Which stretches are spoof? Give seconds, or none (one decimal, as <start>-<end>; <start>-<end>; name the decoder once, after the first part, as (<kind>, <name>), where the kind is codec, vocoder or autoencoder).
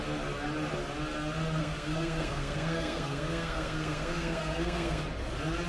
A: 1.6-5.0 (codec, SNAC)